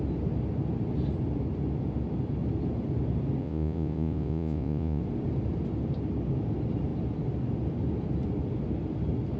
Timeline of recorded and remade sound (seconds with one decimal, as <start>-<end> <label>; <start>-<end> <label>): 0.0-3.4 recorded; 3.4-5.0 remade; 5.0-9.4 recorded